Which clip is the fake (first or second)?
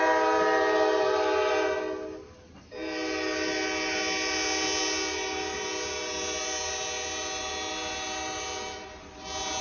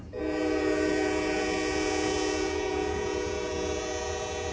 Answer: second